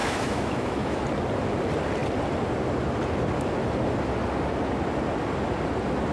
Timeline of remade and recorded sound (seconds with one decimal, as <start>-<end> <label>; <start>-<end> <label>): 0.0-1.0 remade; 1.0-6.1 recorded